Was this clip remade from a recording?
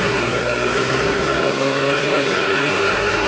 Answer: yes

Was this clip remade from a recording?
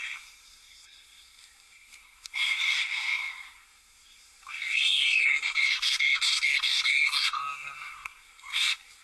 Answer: yes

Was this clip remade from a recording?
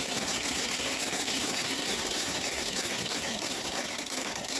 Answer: yes